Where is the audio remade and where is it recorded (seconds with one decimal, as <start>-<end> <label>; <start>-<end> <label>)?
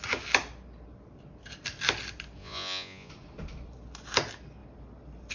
0.0-2.4 recorded; 2.4-3.1 remade; 3.1-5.3 recorded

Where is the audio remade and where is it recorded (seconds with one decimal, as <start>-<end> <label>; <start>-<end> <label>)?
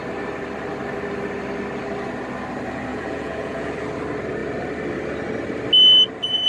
0.0-2.9 recorded; 2.9-3.7 remade; 3.7-6.5 recorded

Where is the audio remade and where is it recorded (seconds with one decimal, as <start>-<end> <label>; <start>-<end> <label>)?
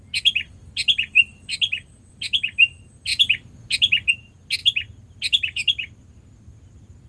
0.0-7.1 recorded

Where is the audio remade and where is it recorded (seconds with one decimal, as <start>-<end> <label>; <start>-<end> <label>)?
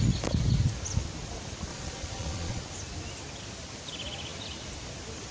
0.0-1.7 recorded; 1.7-2.6 remade; 2.6-5.3 recorded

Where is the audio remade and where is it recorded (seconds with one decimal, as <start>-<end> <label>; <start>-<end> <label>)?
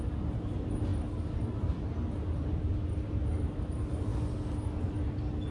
0.0-5.5 recorded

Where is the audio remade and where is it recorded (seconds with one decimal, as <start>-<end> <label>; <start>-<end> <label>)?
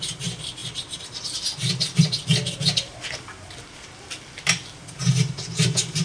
0.0-6.0 recorded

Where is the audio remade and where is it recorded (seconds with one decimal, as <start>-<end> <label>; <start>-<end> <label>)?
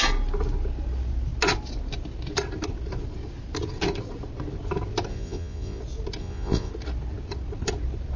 0.0-5.1 recorded; 5.1-5.8 remade; 5.8-6.2 recorded; 6.2-6.7 remade; 6.7-8.2 recorded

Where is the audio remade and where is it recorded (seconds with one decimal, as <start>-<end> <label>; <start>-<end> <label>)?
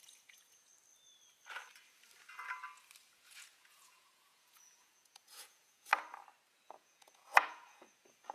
0.0-0.7 remade; 0.7-3.1 recorded; 3.1-5.9 remade; 5.9-6.5 recorded; 6.5-8.3 remade